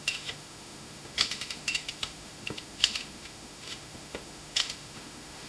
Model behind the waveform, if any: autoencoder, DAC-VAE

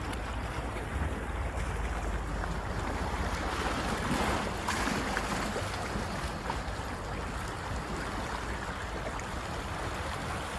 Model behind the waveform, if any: none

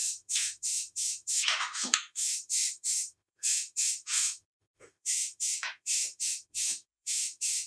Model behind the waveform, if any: autoencoder, DAC-VAE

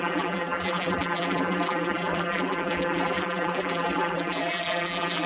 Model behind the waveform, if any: vocoder, BigVGAN v2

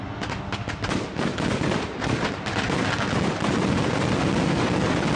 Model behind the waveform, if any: none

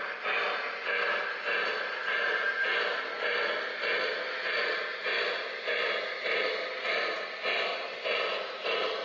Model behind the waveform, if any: none